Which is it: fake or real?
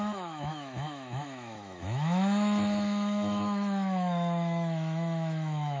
fake